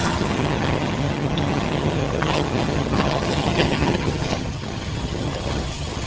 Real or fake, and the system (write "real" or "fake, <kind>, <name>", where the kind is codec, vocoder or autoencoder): fake, vocoder, HiFi-GAN